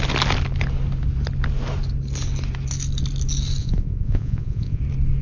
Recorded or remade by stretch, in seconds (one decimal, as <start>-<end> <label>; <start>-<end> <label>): 0.0-3.6 recorded; 3.6-4.8 remade; 4.8-5.2 recorded